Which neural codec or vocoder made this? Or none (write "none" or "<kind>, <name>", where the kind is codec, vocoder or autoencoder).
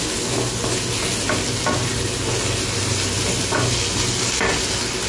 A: none